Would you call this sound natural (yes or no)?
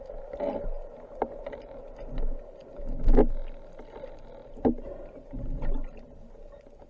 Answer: yes